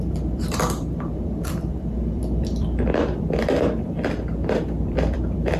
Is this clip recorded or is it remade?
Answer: remade